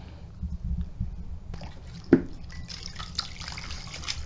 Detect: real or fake real